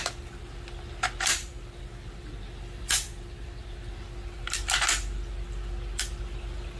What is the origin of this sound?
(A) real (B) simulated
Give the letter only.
A